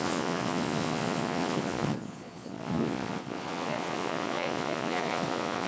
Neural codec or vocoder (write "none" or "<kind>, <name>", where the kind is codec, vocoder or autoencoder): vocoder, Vocos